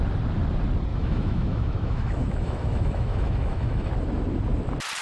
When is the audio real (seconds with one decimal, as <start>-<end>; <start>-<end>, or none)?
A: 0.0-0.9; 3.9-5.0